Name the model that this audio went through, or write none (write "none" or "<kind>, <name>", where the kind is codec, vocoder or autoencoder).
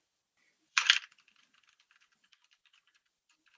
vocoder, BigVGAN v2